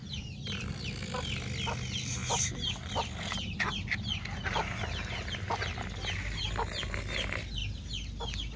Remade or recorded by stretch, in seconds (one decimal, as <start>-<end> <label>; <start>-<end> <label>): 0.0-0.7 remade; 0.7-7.6 recorded; 7.6-8.2 remade; 8.2-8.6 recorded